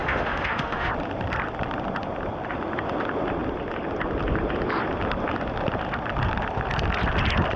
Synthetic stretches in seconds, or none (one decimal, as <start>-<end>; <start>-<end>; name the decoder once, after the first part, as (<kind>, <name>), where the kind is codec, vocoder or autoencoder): 0.0-0.9 (autoencoder, DAC-VAE)